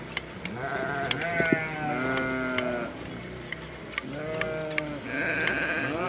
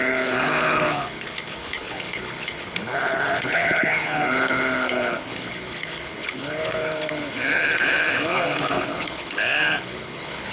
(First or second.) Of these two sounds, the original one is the first